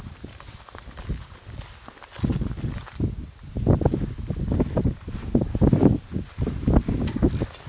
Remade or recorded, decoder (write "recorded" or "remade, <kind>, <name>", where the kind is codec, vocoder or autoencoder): recorded